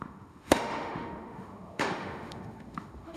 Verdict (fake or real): fake